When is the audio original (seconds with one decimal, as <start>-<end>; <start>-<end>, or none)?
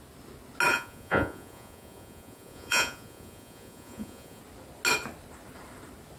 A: 0.0-0.7; 4.4-6.2